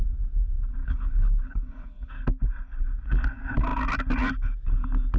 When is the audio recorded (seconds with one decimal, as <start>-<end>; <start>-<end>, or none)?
0.0-0.8; 2.1-5.2